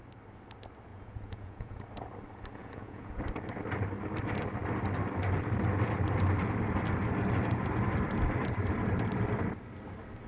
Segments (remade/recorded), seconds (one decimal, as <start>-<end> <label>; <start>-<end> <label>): 0.0-0.9 recorded; 0.9-1.8 remade; 1.8-2.6 recorded; 2.6-3.2 remade; 3.2-10.3 recorded